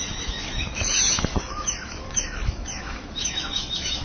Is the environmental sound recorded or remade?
remade